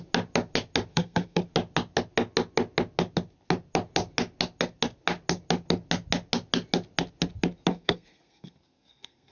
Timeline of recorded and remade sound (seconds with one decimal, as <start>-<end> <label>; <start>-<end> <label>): 0.0-0.9 recorded; 0.9-1.4 remade; 1.4-7.7 recorded; 7.7-9.3 remade